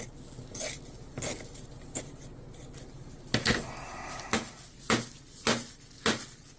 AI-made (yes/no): no